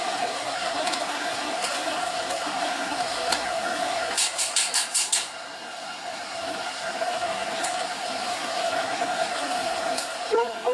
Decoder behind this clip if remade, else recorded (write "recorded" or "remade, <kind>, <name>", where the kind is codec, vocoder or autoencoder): remade, codec, SNAC